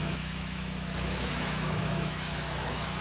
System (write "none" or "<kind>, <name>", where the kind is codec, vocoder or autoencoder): autoencoder, DAC-VAE